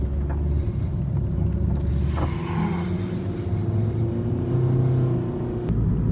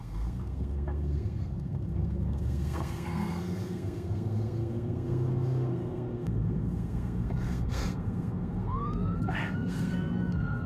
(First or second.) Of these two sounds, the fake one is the second